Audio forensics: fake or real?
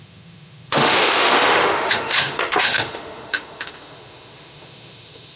fake